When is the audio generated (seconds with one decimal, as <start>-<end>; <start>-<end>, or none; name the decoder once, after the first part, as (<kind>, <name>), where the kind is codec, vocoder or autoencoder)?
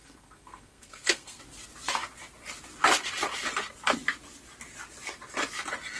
0.0-1.4 (codec, SNAC)